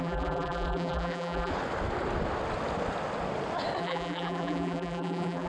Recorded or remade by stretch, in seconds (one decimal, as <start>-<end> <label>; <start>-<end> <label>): 0.0-1.5 remade; 1.5-3.8 recorded; 3.8-5.5 remade